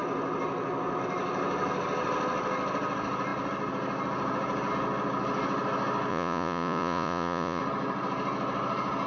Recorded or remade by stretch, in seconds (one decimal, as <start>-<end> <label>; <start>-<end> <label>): 0.0-6.1 recorded; 6.1-7.6 remade; 7.6-9.1 recorded